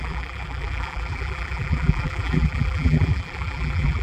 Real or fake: fake